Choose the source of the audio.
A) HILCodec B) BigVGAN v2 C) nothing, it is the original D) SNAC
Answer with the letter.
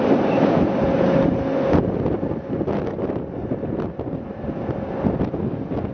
C